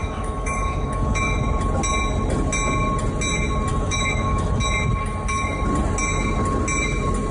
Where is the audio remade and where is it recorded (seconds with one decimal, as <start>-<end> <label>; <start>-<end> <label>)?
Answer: 0.0-1.4 remade; 1.4-3.7 recorded; 3.7-4.6 remade; 4.6-7.3 recorded

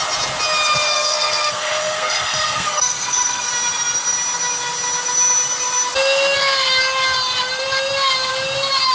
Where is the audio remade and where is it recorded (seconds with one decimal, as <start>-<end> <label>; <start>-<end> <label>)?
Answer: 0.0-0.9 recorded; 0.9-3.5 remade; 3.5-8.9 recorded

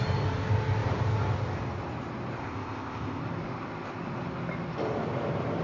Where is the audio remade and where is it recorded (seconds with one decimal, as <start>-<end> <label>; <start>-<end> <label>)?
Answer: 0.0-2.4 recorded; 2.4-3.2 remade; 3.2-5.6 recorded

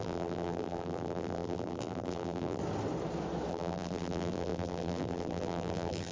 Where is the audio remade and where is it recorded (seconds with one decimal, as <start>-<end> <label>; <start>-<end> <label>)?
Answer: 0.0-2.6 remade; 2.6-3.5 recorded; 3.5-6.1 remade

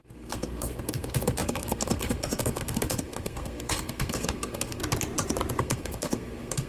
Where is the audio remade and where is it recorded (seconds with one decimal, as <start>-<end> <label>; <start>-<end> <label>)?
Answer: 0.0-4.8 remade; 4.8-5.6 recorded; 5.6-6.7 remade

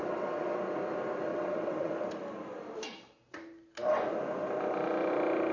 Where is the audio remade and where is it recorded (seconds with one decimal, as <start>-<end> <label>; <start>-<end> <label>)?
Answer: 0.0-0.6 remade; 0.6-1.3 recorded; 1.3-1.9 remade; 1.9-5.5 recorded

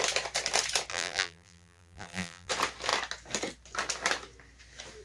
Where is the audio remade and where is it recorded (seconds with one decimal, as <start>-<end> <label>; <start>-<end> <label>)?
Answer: 0.0-0.9 recorded; 0.9-2.5 remade; 2.5-5.0 recorded